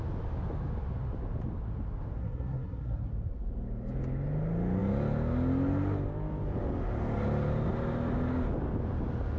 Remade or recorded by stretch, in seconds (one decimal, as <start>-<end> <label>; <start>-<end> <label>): 0.0-2.2 recorded; 2.2-3.1 remade; 3.1-9.4 recorded